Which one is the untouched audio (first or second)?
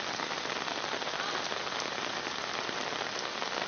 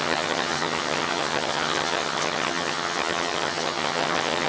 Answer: first